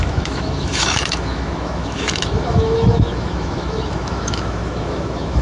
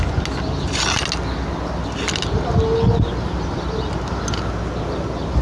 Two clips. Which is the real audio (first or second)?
second